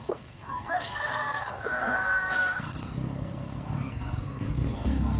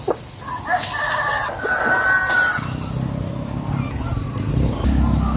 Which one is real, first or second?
second